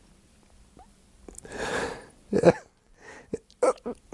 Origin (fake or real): fake